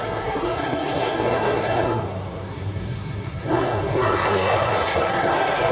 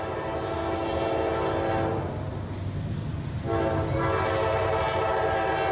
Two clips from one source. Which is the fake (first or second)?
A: first